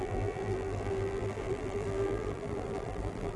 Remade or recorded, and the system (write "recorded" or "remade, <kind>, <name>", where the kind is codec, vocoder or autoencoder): remade, vocoder, BigVGAN v2